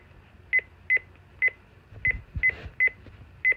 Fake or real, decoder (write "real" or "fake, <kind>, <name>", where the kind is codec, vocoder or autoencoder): real